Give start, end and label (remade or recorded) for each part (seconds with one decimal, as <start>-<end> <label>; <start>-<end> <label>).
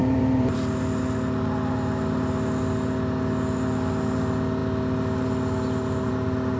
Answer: 0.0-0.6 remade; 0.6-6.6 recorded